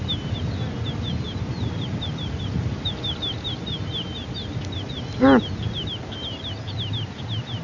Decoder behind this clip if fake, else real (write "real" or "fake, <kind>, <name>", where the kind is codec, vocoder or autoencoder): real